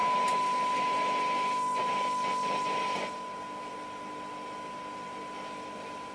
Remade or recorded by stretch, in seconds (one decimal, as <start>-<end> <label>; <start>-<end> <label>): 0.0-6.1 recorded